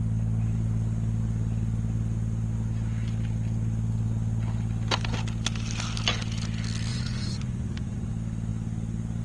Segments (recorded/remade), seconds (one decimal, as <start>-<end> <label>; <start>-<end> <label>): 0.0-6.9 recorded; 6.9-8.1 remade; 8.1-9.2 recorded